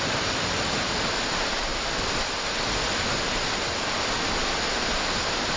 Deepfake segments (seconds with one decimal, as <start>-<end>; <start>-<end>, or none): none